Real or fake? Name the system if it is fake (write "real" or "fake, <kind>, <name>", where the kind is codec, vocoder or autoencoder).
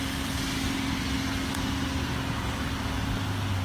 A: real